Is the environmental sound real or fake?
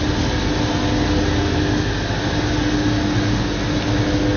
real